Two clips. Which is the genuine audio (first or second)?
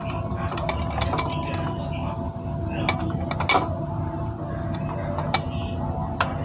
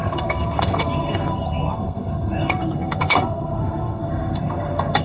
first